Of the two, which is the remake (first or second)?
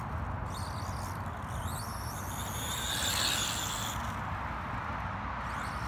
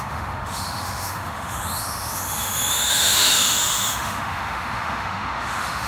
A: second